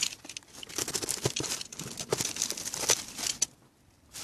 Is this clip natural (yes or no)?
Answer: yes